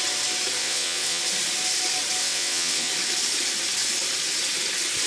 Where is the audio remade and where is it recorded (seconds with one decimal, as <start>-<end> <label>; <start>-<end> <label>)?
0.0-0.6 recorded; 0.6-1.2 remade; 1.2-2.2 recorded; 2.2-2.9 remade; 2.9-5.1 recorded